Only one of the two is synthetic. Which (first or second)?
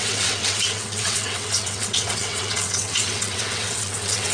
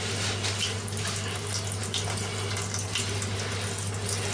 first